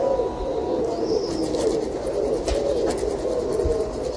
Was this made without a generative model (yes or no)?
yes